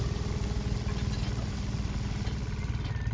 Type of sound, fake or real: real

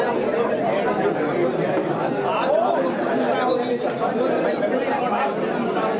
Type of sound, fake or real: real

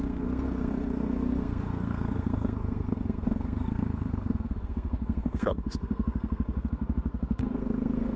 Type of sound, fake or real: fake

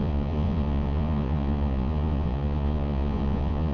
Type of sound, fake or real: fake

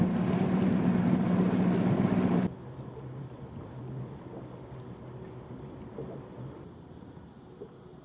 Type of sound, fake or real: real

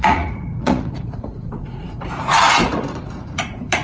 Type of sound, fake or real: fake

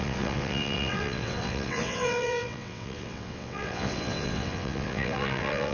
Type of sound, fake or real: fake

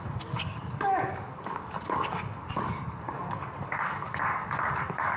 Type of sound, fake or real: fake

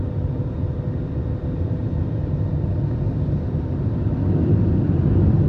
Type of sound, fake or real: real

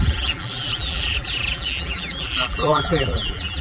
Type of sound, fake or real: fake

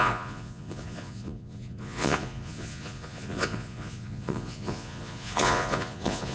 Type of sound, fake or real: fake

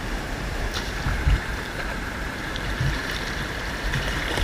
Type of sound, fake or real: fake